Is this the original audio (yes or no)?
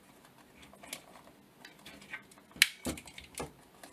yes